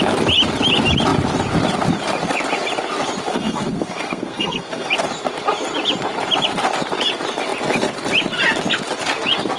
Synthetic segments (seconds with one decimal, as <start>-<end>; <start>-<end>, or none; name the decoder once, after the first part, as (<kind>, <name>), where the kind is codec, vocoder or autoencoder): 3.3-4.9 (codec, SNAC)